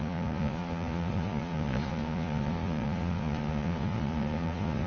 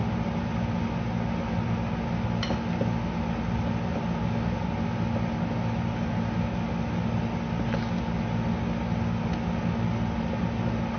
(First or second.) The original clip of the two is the second